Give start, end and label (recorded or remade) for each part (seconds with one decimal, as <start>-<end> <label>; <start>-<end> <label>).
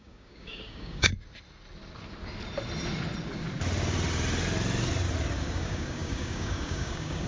0.0-1.1 remade; 1.1-5.4 recorded; 5.4-7.3 remade